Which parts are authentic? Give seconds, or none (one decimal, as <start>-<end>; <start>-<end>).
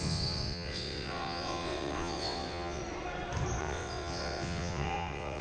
2.8-3.6